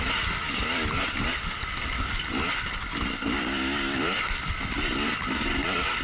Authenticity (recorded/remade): recorded